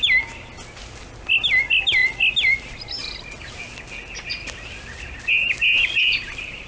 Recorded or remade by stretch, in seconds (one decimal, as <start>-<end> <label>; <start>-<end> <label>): 0.0-6.7 recorded